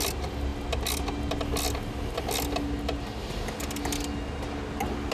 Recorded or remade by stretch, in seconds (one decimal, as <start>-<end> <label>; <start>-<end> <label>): 0.0-5.1 recorded